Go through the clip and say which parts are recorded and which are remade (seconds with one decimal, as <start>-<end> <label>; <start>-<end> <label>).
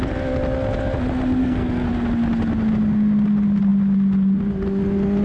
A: 0.0-1.4 recorded; 1.4-1.9 remade; 1.9-5.2 recorded